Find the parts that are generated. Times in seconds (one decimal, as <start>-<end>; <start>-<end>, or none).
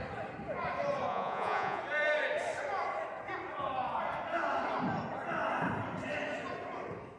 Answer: 1.1-1.8